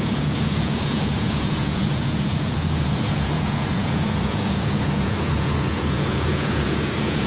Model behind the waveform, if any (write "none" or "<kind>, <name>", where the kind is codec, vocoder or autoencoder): vocoder, Vocos